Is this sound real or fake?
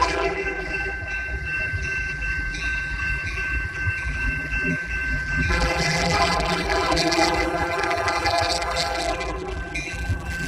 fake